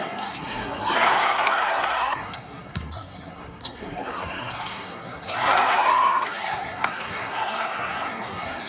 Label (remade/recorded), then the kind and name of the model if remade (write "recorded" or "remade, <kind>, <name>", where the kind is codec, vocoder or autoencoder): remade, codec, SNAC